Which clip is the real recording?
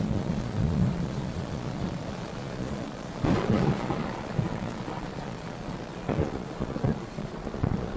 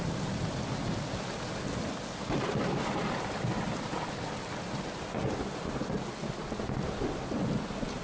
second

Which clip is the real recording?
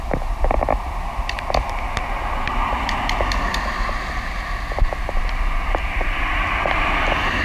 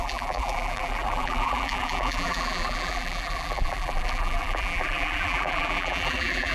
first